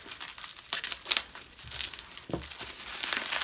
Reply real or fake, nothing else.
real